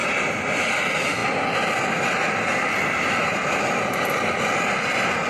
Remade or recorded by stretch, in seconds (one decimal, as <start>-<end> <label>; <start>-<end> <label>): 0.0-0.7 remade; 0.7-5.3 recorded